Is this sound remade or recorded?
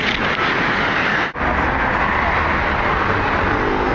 recorded